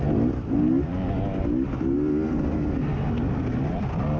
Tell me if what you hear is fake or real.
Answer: real